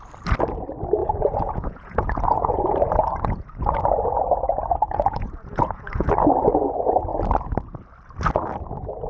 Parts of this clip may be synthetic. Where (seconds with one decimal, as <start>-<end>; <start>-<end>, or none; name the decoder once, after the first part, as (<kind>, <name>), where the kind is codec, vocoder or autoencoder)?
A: 1.0-6.1 (vocoder, Vocos)